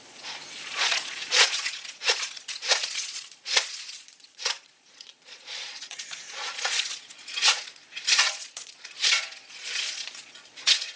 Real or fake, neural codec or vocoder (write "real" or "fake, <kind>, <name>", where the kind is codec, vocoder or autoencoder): fake, vocoder, Vocos